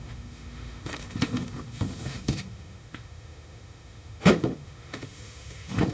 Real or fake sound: fake